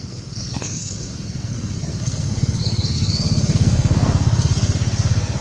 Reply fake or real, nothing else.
fake